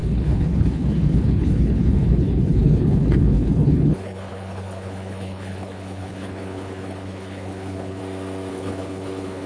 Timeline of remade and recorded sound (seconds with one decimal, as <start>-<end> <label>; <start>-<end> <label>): 0.0-8.0 remade; 8.0-8.5 recorded; 8.5-9.5 remade